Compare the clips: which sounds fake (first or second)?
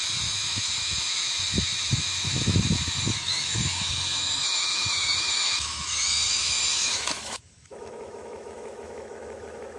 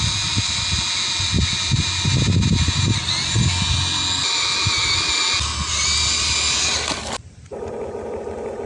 first